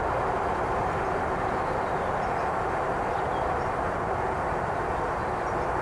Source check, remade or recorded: remade